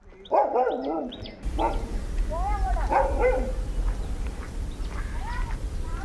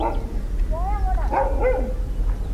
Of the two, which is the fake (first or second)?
first